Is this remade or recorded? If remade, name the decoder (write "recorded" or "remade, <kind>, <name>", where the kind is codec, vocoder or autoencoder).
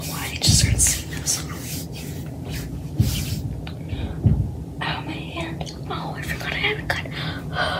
recorded